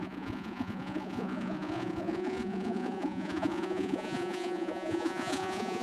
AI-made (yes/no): yes